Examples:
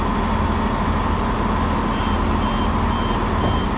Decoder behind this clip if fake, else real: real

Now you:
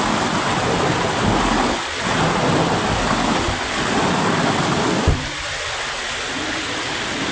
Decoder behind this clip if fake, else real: real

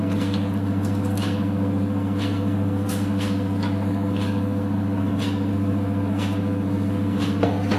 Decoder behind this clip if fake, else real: fake, codec, SNAC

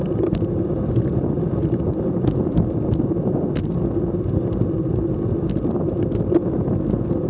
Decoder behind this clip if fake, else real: real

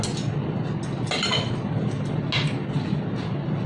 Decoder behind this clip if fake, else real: real